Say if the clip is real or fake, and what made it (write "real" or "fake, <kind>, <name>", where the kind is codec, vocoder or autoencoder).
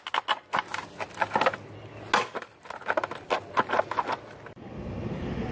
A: real